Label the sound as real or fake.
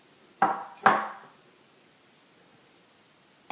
real